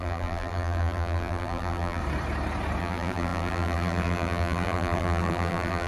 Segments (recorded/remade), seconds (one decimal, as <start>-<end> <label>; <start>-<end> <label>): 0.0-2.0 remade; 2.0-2.8 recorded; 2.8-5.9 remade

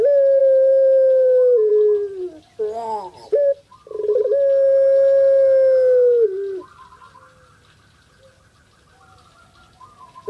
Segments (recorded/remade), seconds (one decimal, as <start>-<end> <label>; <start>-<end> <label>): 0.0-10.3 recorded

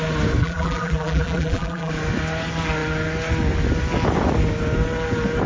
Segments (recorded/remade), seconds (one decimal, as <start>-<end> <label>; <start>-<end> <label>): 0.0-0.4 recorded; 0.4-1.9 remade; 1.9-5.5 recorded

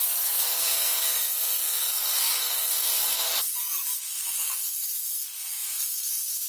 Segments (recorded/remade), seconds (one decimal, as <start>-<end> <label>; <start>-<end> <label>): 0.0-6.5 remade